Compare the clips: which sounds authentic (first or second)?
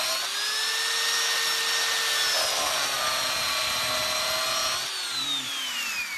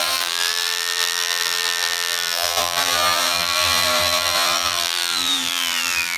first